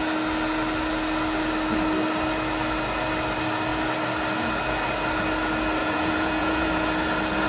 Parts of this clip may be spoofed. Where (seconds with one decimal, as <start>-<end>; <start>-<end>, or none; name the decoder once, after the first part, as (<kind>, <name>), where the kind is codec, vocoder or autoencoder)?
5.8-6.7 (vocoder, Vocos)